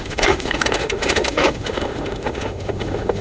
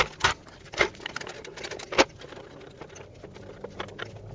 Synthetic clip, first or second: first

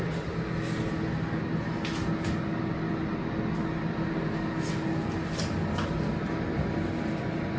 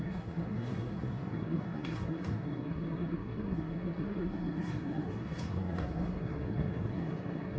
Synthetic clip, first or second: second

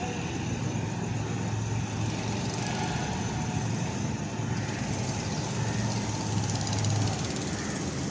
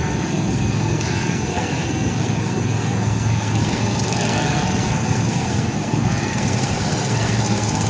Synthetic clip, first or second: second